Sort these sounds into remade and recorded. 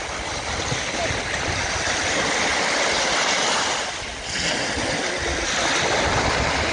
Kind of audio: recorded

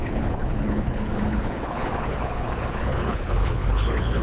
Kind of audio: remade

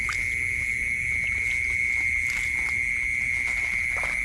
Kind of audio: recorded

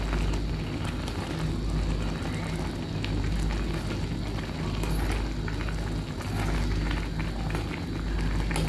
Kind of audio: recorded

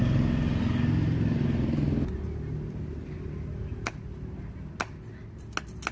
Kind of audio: recorded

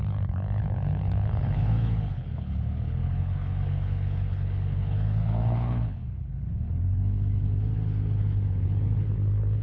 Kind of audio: remade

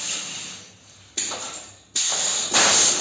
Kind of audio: recorded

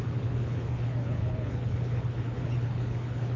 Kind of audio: remade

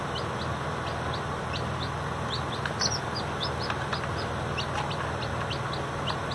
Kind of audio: recorded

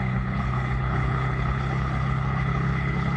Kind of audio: remade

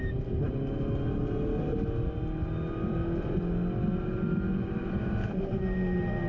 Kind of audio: recorded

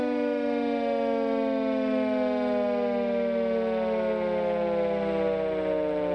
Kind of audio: recorded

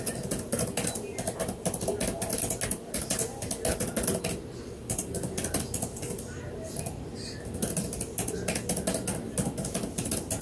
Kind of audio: recorded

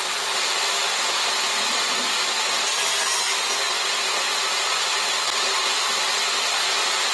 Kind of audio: recorded